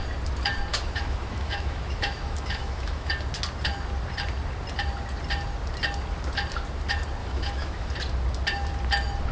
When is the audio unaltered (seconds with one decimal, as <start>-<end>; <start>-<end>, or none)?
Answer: 0.0-0.7; 3.1-7.2; 7.9-9.3